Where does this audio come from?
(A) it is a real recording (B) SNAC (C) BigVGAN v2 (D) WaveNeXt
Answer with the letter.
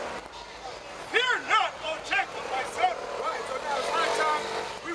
A